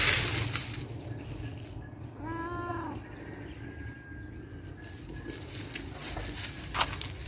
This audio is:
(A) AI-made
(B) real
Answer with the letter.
B